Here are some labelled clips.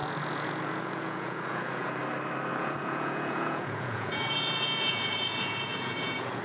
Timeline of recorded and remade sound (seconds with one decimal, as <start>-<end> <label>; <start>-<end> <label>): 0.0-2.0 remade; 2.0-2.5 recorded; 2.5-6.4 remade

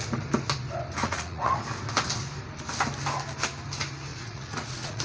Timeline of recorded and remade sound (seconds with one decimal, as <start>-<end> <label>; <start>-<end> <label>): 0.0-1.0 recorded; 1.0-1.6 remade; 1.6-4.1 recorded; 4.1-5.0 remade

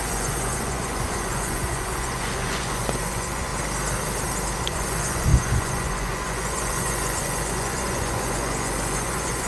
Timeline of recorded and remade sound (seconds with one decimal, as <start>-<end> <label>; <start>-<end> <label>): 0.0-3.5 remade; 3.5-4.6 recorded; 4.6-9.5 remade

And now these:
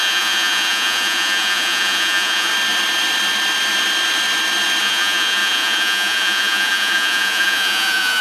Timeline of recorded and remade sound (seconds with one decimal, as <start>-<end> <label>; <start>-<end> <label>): 0.0-2.5 remade; 2.5-4.8 recorded; 4.8-8.2 remade